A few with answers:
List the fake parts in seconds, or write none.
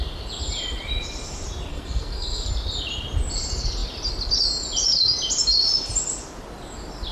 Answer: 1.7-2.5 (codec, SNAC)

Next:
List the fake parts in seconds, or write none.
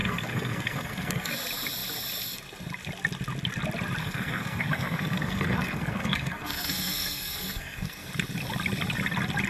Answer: 0.0-1.3 (codec, SNAC); 4.0-8.1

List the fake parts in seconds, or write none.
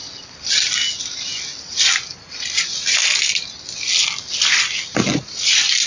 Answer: none